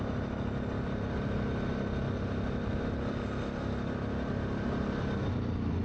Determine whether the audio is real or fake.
real